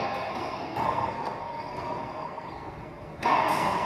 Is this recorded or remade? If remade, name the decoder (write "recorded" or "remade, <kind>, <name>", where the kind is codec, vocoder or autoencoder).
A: remade, codec, SNAC